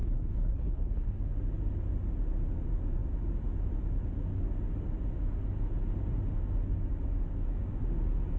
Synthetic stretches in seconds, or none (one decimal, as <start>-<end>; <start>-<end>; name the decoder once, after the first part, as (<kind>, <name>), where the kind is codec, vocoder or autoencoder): 0.0-1.2 (codec, HILCodec)